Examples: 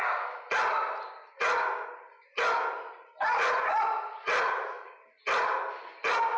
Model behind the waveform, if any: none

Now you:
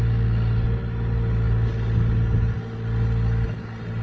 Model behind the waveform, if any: none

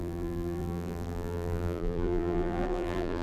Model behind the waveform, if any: vocoder, BigVGAN v2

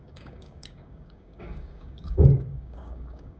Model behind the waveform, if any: codec, DAC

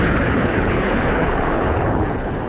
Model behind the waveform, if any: codec, HILCodec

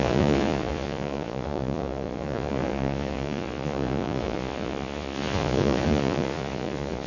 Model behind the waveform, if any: vocoder, Vocos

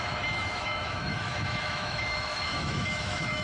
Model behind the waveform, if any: autoencoder, DAC-VAE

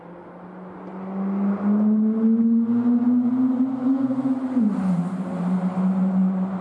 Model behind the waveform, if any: none